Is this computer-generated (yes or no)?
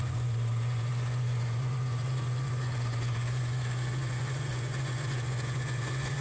yes